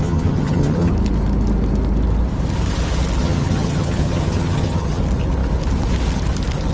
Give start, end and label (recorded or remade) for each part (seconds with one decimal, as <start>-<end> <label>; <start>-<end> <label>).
0.0-0.9 remade; 0.9-3.2 recorded; 3.2-5.0 remade; 5.0-6.7 recorded